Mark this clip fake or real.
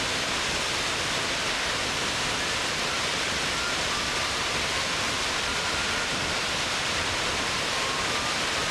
real